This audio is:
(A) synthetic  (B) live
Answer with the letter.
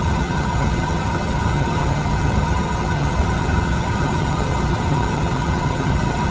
A